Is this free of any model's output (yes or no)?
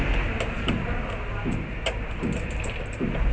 yes